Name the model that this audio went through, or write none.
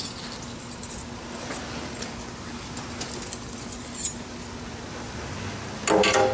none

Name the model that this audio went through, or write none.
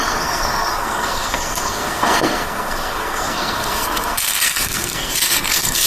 codec, SNAC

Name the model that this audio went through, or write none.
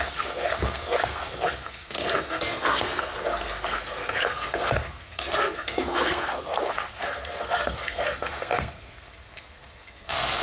codec, SNAC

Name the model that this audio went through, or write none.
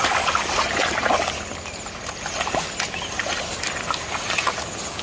none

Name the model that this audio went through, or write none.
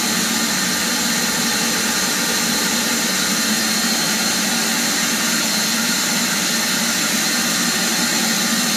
none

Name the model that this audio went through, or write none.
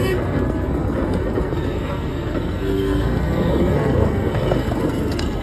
codec, SNAC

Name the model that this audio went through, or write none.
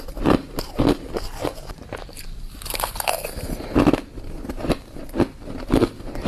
none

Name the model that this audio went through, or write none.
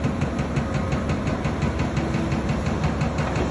none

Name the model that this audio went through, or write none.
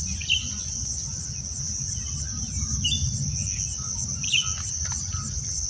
none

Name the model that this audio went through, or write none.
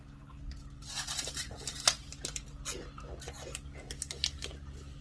none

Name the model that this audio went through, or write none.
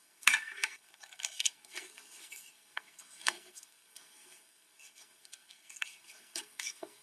codec, SNAC